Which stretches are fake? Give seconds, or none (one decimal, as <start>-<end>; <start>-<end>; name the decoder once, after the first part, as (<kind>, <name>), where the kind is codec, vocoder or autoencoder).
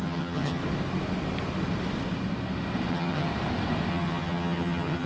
0.0-0.6 (vocoder, HiFi-GAN); 2.9-3.3; 3.9-5.1